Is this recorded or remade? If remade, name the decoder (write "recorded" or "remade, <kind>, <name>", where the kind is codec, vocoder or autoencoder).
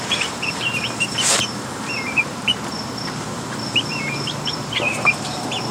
remade, vocoder, BigVGAN v2